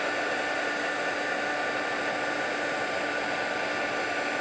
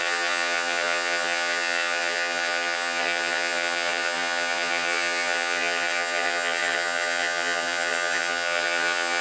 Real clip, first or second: first